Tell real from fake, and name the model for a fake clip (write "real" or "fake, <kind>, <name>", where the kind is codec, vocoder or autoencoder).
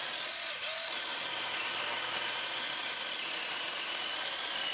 fake, vocoder, BigVGAN v2